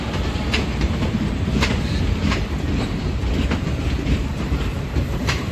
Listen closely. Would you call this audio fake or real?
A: fake